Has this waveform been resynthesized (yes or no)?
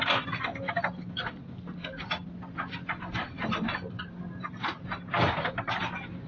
no